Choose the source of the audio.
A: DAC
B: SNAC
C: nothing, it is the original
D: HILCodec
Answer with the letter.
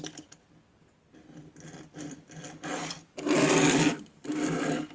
C